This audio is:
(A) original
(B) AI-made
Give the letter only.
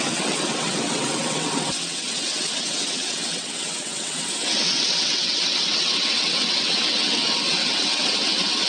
B